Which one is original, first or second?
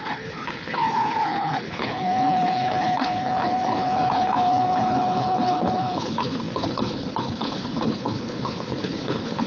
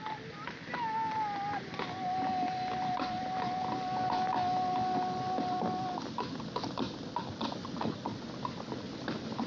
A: second